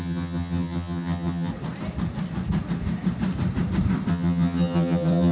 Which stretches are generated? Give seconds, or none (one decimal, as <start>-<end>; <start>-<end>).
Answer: 0.0-1.5; 4.1-5.3